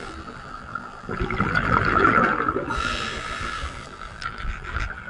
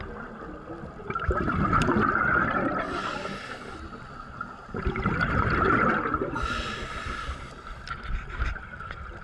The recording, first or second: second